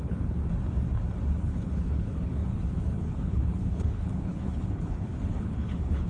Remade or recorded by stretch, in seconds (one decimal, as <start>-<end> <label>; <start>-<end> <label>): 0.0-0.4 remade; 0.4-1.4 recorded; 1.4-6.1 remade